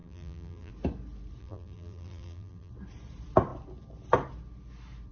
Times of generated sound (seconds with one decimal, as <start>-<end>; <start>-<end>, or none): 0.0-0.7; 1.4-2.7